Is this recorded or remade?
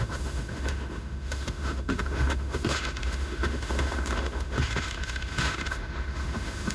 remade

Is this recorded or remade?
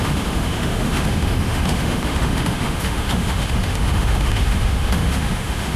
remade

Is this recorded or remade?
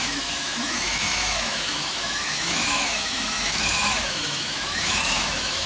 remade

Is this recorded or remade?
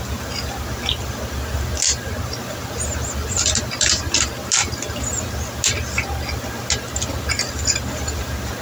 recorded